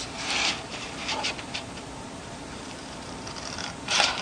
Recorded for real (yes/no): no